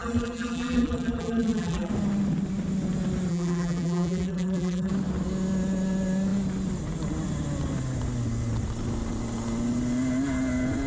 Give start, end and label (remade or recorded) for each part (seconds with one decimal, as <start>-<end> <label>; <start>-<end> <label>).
0.0-1.9 remade; 1.9-3.3 recorded; 3.3-4.9 remade; 4.9-10.9 recorded

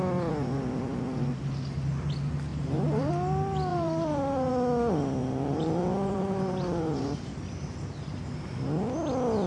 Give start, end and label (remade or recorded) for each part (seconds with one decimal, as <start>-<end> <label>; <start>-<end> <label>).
0.0-2.5 recorded; 2.5-3.1 remade; 3.1-3.7 recorded; 3.7-4.5 remade; 4.5-5.2 recorded; 5.2-7.4 remade; 7.4-9.5 recorded